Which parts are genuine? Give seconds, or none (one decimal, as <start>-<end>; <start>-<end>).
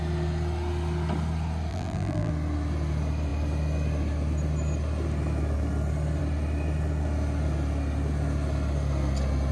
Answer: 0.0-1.7; 2.3-9.5